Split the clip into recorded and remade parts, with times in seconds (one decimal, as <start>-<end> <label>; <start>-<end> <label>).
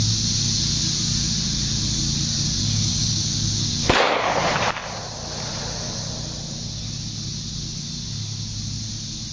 0.0-2.6 recorded; 2.6-3.1 remade; 3.1-9.3 recorded